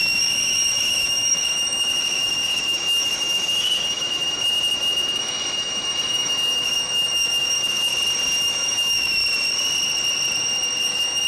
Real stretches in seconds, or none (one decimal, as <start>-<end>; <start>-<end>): 7.9-8.4; 9.2-10.8